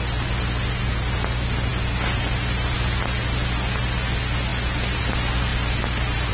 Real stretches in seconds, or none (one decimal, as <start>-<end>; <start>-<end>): 0.0-6.3